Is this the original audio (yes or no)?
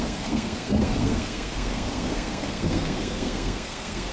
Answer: no